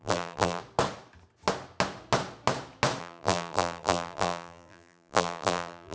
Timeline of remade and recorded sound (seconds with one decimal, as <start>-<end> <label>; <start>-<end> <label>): 0.0-0.6 remade; 0.6-3.0 recorded; 3.0-5.9 remade